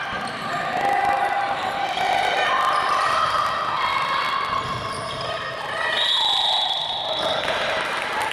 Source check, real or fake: real